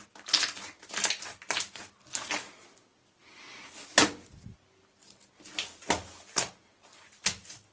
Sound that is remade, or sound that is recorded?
recorded